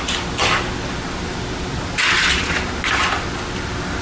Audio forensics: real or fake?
real